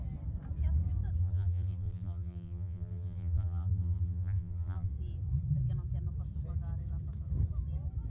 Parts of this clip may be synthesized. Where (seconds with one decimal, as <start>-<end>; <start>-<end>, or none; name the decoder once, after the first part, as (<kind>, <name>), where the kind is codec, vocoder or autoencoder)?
1.2-4.9 (vocoder, BigVGAN v2)